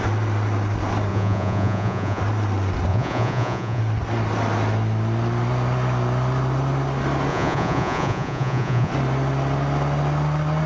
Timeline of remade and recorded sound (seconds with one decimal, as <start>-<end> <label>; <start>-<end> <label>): 0.0-1.1 recorded; 1.1-2.2 remade; 2.2-2.9 recorded; 2.9-3.8 remade; 3.8-7.3 recorded; 7.3-8.9 remade; 8.9-10.7 recorded